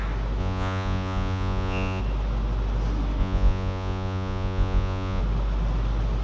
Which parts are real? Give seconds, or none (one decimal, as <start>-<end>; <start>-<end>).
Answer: 0.0-0.4; 2.0-3.2; 5.2-6.2